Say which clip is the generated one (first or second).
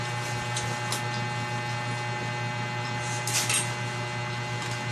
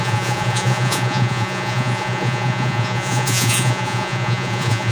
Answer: second